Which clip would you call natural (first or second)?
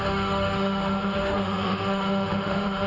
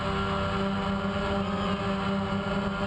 second